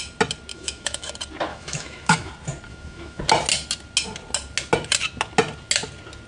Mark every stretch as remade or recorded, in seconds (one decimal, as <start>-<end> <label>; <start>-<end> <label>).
0.0-0.5 recorded; 0.5-1.1 remade; 1.1-1.5 recorded; 1.5-2.3 remade; 2.3-2.7 recorded; 2.7-3.2 remade; 3.2-6.3 recorded